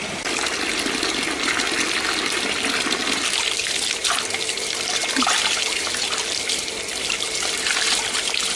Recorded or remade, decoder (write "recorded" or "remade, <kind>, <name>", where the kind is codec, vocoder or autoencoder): recorded